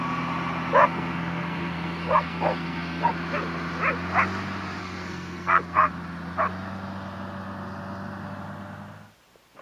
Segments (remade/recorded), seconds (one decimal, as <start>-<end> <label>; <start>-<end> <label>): 0.0-0.8 recorded; 0.8-3.1 remade; 3.1-4.8 recorded; 4.8-5.9 remade; 5.9-9.6 recorded